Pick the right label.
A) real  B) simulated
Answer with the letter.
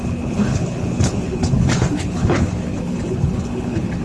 B